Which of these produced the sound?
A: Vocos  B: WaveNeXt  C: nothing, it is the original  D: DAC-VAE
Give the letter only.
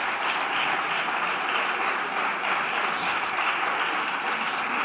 C